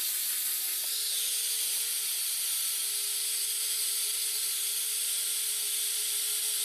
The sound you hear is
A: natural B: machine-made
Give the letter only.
B